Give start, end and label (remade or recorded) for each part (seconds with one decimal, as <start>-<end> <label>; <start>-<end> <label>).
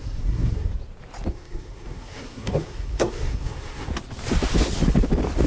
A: 0.0-0.7 remade; 0.7-1.3 recorded; 1.3-3.9 remade; 3.9-5.5 recorded